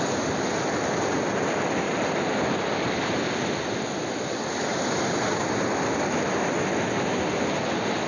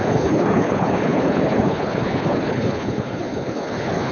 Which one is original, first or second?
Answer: first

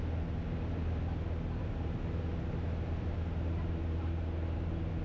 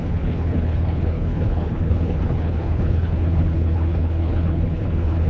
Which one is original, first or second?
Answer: first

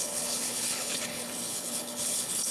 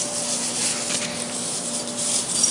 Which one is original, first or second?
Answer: second